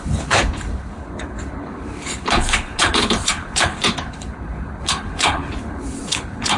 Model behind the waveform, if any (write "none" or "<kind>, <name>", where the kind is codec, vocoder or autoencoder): codec, HILCodec